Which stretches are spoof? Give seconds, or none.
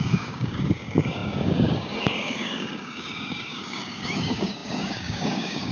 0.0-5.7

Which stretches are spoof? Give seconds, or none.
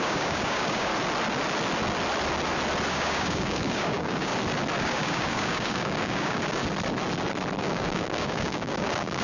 0.0-0.9; 2.9-4.3; 4.8-6.6; 7.6-9.2